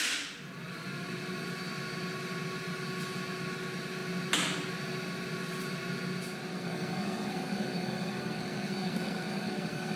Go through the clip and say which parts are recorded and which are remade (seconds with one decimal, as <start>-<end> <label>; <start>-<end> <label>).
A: 0.0-6.5 recorded; 6.5-10.0 remade